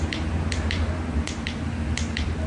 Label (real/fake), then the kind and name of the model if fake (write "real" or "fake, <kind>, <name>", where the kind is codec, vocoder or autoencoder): real